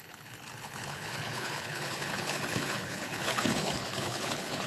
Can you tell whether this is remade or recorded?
remade